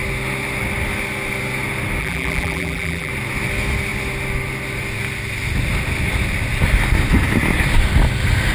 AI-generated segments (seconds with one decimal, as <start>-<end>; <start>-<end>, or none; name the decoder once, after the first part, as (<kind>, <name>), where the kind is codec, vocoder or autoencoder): 2.0-3.1 (vocoder, BigVGAN v2)